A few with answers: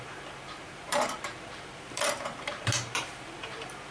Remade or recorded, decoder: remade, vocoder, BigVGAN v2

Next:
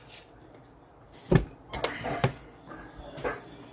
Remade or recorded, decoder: recorded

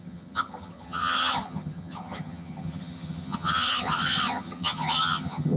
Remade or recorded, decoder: remade, vocoder, HiFi-GAN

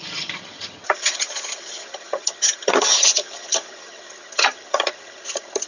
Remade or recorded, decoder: remade, vocoder, HiFi-GAN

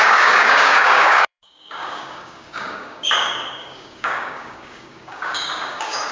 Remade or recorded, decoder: remade, codec, DAC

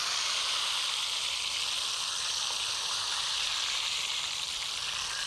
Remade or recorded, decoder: recorded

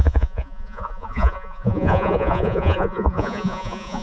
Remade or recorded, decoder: remade, vocoder, Vocos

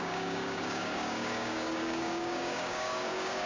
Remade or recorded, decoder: remade, codec, DAC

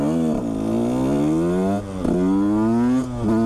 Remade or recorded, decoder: recorded